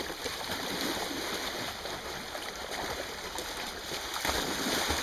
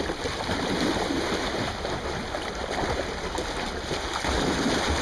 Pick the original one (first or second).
second